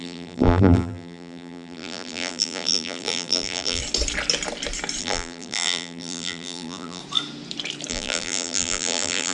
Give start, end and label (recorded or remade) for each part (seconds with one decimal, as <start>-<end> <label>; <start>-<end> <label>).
0.0-3.8 remade; 3.8-5.0 recorded; 5.0-7.0 remade; 7.0-7.9 recorded; 7.9-9.3 remade